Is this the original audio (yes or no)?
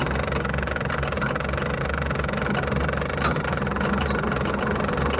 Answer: yes